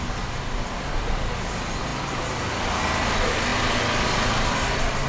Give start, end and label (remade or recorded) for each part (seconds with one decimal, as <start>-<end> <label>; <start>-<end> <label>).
0.0-5.1 recorded